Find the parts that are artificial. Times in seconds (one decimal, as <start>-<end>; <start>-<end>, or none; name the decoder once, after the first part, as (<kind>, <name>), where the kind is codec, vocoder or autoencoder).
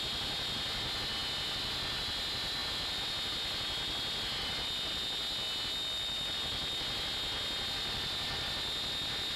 none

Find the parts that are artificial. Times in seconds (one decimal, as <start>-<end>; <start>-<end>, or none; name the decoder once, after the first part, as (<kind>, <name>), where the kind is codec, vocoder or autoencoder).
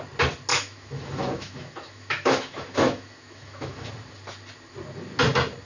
0.5-3.9 (autoencoder, DAC-VAE)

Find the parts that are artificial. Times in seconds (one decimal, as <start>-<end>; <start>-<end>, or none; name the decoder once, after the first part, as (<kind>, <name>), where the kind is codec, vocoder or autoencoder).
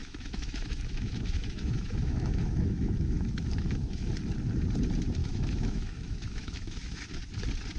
0.0-4.1 (autoencoder, DAC-VAE); 5.2-7.0